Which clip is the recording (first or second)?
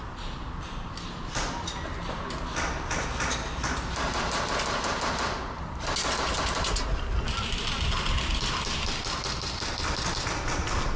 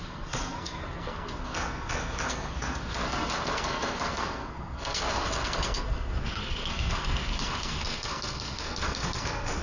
first